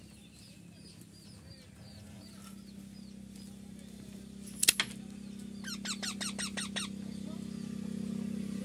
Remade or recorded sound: recorded